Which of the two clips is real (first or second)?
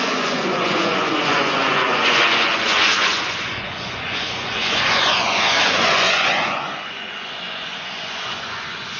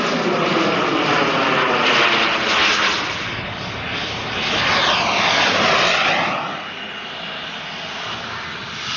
second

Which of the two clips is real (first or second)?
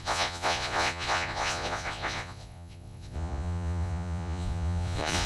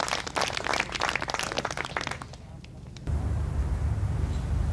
second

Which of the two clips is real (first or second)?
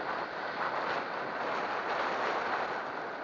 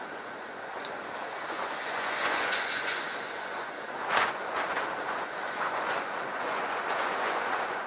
first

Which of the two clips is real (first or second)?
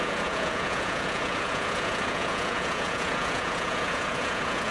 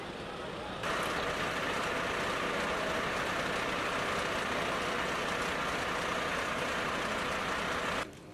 second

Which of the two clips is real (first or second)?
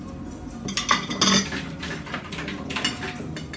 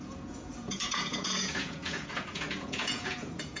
first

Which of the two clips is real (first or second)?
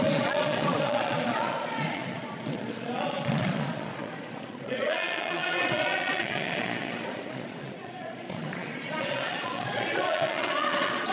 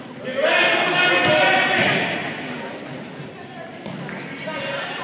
second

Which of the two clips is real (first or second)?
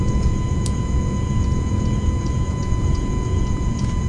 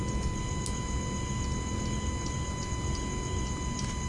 second